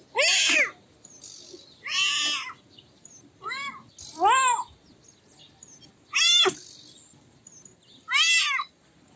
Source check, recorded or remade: recorded